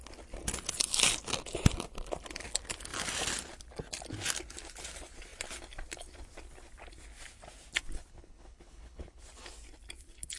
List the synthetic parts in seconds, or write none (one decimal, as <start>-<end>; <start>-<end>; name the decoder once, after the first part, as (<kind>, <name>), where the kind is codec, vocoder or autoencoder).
8.1-9.2 (codec, HILCodec)